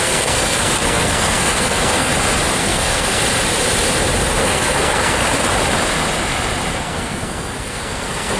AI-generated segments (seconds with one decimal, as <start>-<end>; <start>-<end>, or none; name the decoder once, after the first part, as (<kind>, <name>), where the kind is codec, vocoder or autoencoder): 0.0-2.1 (codec, SNAC); 2.6-3.2; 4.4-5.2; 6.7-8.4

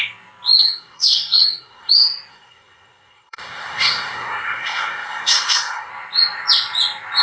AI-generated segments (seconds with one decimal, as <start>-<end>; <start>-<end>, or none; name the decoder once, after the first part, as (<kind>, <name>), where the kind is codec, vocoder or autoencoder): 0.6-1.9 (codec, SNAC); 2.3-5.9

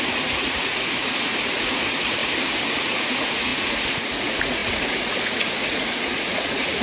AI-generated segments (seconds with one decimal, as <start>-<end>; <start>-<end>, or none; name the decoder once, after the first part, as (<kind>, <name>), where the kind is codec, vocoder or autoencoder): 0.0-2.2 (vocoder, Vocos); 2.8-6.8

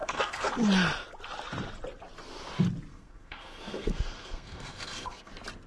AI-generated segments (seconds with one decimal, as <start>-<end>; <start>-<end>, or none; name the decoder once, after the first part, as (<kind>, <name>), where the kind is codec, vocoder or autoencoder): 0.0-0.5 (codec, SNAC); 2.9-5.3

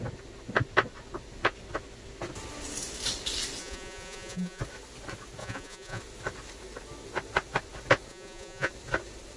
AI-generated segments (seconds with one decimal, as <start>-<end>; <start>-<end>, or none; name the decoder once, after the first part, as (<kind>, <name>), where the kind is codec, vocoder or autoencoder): 3.6-4.6 (vocoder, Vocos); 5.4-6.0; 8.1-8.7